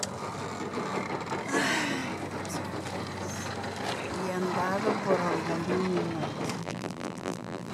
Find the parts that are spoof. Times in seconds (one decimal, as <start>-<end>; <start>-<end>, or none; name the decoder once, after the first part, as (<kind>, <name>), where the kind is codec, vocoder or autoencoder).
6.6-7.7 (vocoder, BigVGAN v2)

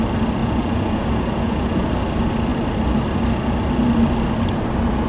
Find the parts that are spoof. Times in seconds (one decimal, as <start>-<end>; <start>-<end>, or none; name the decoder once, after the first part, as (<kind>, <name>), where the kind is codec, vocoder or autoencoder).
0.4-1.9 (vocoder, Vocos)

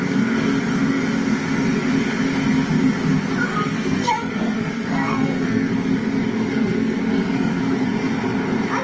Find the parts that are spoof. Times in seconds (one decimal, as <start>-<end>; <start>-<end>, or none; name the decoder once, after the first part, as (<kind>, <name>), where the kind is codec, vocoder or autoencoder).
3.5-5.7 (codec, SNAC); 6.5-7.6